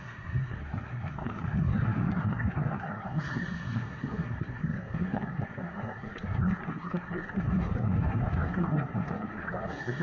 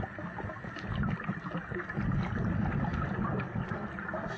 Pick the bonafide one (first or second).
second